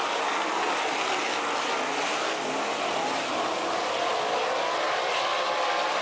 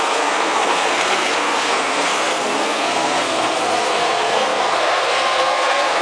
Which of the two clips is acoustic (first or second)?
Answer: first